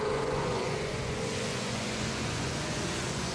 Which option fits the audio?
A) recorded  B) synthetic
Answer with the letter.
B